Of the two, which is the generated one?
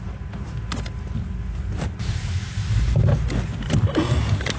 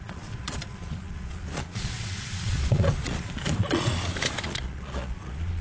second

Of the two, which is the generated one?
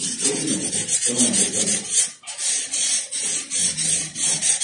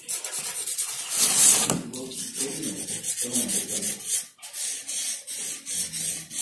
first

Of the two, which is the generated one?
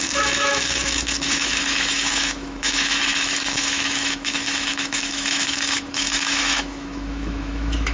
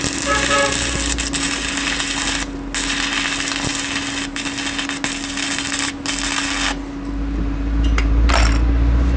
first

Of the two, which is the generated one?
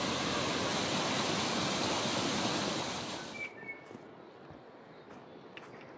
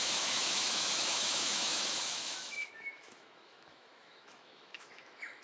second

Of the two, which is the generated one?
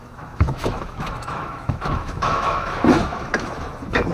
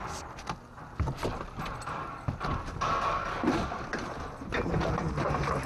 first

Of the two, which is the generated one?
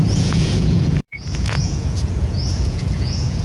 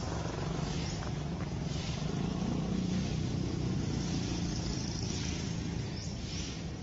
first